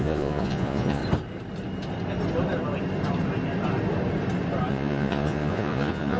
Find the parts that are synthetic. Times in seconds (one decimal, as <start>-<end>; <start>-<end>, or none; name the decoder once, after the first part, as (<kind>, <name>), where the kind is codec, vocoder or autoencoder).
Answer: 0.0-1.0 (vocoder, Vocos); 4.7-6.2